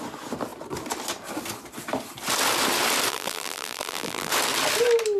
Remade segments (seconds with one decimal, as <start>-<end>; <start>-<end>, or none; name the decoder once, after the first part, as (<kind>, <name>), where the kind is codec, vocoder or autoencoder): 3.1-4.3 (vocoder, BigVGAN v2)